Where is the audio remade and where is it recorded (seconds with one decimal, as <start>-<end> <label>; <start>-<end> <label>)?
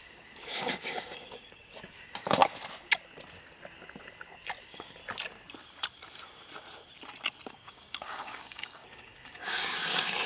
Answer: 0.0-2.4 remade; 2.4-4.6 recorded; 4.6-5.0 remade; 5.0-7.5 recorded; 7.5-10.3 remade